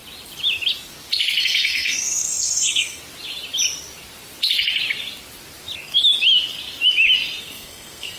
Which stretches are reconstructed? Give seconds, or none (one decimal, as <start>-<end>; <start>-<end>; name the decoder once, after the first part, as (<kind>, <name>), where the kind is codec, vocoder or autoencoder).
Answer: 1.4-3.0 (codec, SNAC); 7.4-8.2